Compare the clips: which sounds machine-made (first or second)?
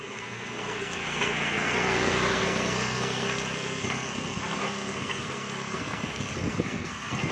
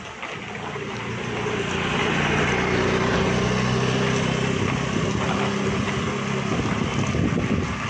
first